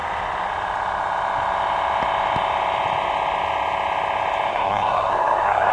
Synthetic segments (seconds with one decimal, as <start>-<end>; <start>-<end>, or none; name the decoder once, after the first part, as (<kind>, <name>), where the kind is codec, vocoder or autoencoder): 4.5-5.7 (codec, SNAC)